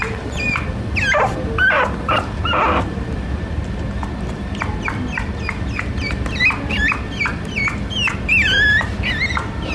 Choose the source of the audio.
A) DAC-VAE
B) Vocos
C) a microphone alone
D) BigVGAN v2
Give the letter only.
C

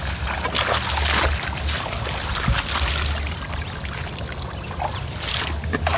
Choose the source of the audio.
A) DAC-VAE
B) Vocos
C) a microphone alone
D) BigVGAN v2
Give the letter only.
C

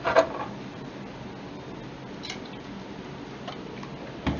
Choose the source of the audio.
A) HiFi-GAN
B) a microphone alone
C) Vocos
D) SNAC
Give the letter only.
B